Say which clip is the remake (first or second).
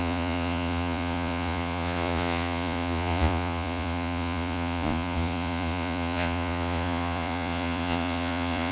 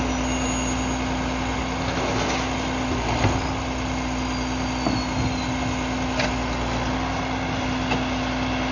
first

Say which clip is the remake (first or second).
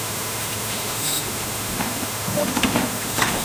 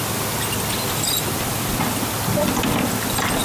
first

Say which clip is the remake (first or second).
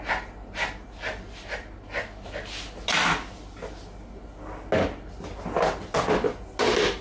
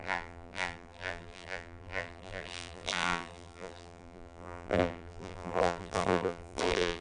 second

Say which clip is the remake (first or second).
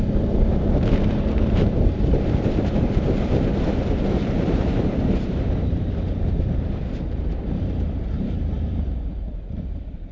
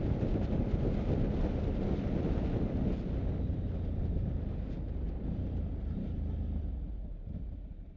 first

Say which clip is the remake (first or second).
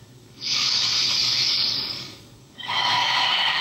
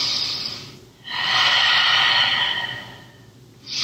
first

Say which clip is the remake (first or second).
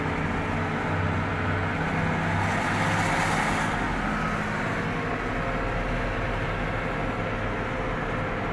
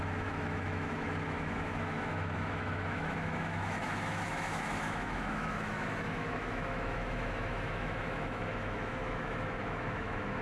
second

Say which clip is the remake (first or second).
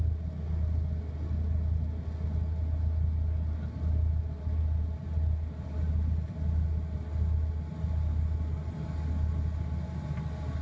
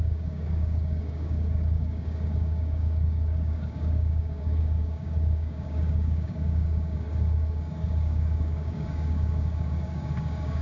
second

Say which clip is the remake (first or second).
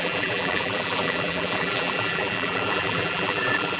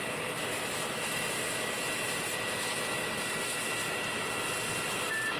first